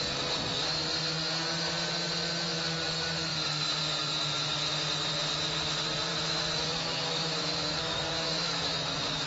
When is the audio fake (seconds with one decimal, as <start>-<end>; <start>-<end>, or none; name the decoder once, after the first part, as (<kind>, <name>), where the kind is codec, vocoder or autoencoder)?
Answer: 6.1-9.3 (autoencoder, DAC-VAE)